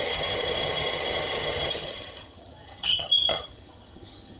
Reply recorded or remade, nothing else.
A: remade